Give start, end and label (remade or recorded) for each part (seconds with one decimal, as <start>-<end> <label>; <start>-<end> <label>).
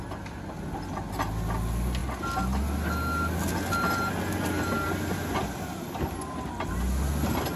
0.0-7.6 recorded